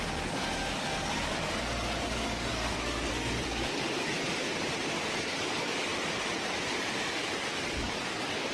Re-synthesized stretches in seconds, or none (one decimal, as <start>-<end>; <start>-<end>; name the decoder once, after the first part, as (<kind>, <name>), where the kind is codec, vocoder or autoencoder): 0.0-4.2 (codec, DAC); 5.2-5.9; 7.1-8.5